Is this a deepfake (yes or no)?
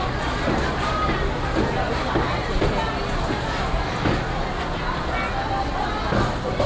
no